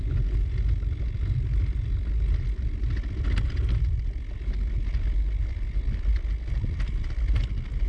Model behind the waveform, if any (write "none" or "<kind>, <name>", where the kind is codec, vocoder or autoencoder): none